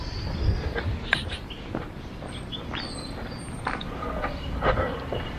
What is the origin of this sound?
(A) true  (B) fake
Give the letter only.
B